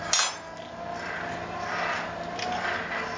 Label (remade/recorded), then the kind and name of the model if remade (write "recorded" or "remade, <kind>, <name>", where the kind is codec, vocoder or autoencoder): recorded